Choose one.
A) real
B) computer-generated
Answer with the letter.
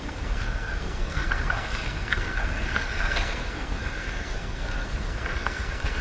B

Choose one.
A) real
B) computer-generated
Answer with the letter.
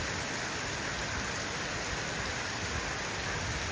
A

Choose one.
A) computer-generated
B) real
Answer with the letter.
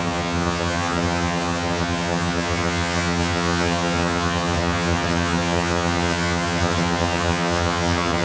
A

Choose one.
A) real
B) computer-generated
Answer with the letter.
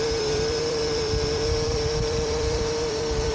B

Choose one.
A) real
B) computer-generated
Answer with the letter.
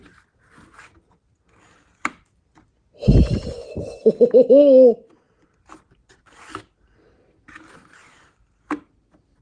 A